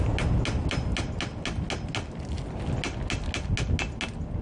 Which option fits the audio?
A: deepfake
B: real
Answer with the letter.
B